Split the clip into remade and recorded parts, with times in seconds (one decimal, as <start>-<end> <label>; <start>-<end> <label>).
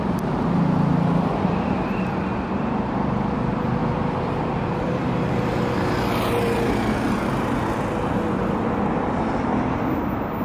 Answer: 0.0-10.4 recorded